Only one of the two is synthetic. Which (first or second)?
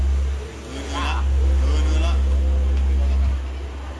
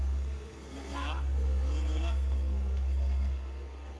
second